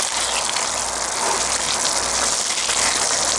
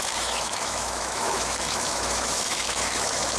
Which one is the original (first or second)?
first